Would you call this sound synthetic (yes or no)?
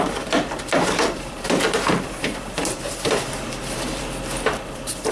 yes